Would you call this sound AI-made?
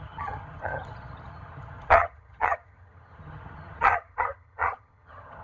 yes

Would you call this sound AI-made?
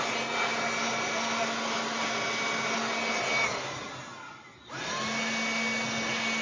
no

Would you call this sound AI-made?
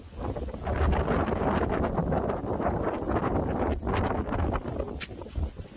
no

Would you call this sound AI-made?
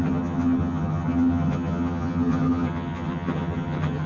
yes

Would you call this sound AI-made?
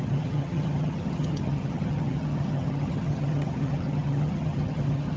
yes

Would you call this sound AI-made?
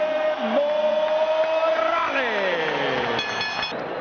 no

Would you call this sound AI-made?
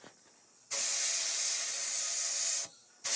no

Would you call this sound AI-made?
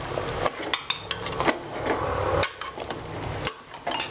no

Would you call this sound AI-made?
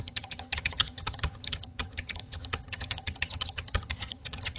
yes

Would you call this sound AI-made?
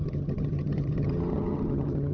yes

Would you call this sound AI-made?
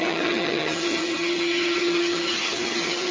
yes